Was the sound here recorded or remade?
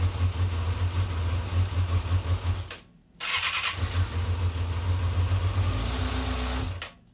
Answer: recorded